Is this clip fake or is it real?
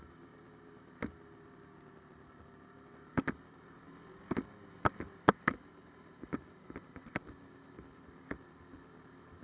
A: real